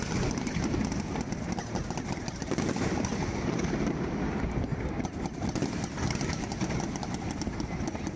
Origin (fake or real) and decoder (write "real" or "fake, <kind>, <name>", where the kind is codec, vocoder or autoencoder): real